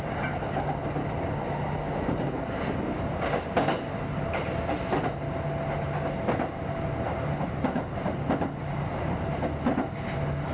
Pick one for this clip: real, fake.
real